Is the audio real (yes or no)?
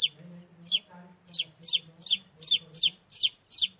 yes